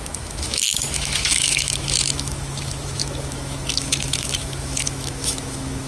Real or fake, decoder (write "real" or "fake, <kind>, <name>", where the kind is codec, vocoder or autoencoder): fake, autoencoder, DAC-VAE